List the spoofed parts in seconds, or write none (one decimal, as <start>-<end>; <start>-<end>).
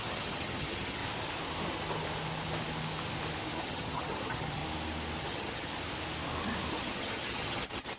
0.0-1.0; 3.6-4.6; 5.2-5.7; 6.7-8.0